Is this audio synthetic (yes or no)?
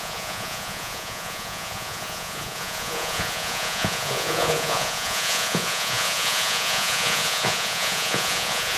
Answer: yes